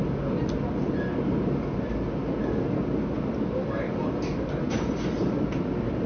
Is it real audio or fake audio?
real